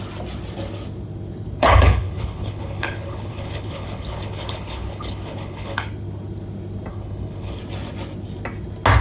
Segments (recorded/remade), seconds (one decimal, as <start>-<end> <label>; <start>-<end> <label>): 0.0-1.6 recorded; 1.6-5.9 remade; 5.9-6.9 recorded; 6.9-7.6 remade; 7.6-9.0 recorded